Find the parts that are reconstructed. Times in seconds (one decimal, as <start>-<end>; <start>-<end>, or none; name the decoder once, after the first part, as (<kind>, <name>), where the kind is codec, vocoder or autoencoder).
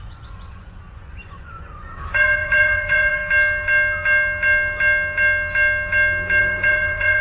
0.0-3.2 (vocoder, Vocos); 6.4-7.2